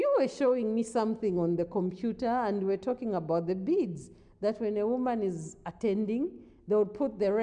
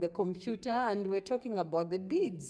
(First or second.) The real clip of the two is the first